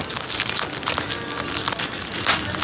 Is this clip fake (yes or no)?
no